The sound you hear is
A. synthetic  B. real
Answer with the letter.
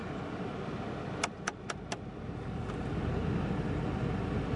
B